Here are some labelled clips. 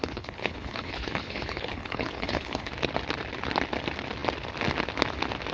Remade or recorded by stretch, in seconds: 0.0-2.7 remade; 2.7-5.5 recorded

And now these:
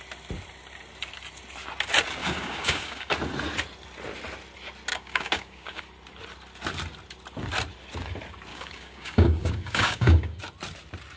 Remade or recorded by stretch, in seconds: 0.0-2.2 recorded; 2.2-3.1 remade; 3.1-4.9 recorded; 4.9-5.8 remade; 5.8-8.5 recorded; 8.5-10.4 remade; 10.4-11.2 recorded

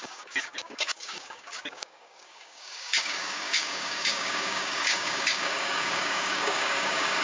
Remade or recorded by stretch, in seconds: 0.0-7.2 remade

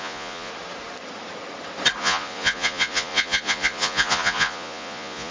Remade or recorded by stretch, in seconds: 0.0-0.5 remade; 0.5-2.0 recorded; 2.0-5.3 remade

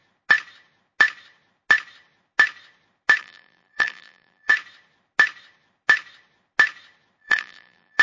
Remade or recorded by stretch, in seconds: 0.0-3.2 recorded; 3.2-4.5 remade; 4.5-7.2 recorded; 7.2-8.0 remade

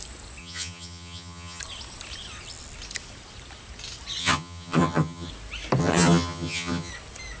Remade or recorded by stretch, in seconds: 0.0-0.4 recorded; 0.4-1.6 remade; 1.6-4.2 recorded; 4.2-5.3 remade; 5.3-5.8 recorded; 5.8-6.9 remade; 6.9-7.4 recorded

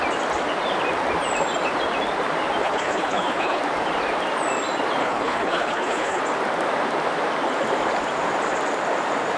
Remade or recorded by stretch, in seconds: 0.0-2.6 recorded; 2.6-3.6 remade; 3.6-5.0 recorded; 5.0-6.2 remade; 6.2-9.4 recorded

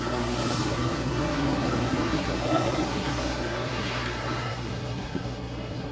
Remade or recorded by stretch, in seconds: 0.0-5.9 remade